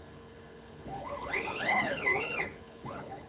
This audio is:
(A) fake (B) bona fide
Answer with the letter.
A